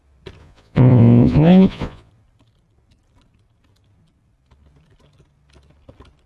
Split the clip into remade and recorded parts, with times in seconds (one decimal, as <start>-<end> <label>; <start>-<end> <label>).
0.0-0.4 recorded; 0.4-2.1 remade; 2.1-6.3 recorded